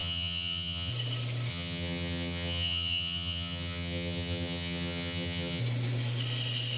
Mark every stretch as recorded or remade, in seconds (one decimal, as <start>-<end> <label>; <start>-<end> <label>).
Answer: 0.0-0.9 remade; 0.9-1.5 recorded; 1.5-5.6 remade; 5.6-6.8 recorded